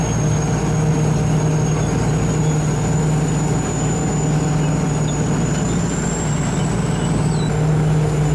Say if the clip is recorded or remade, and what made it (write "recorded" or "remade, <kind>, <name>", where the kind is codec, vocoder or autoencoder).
recorded